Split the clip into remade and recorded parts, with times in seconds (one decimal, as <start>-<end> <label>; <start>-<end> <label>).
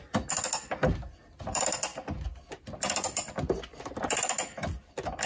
0.0-5.3 recorded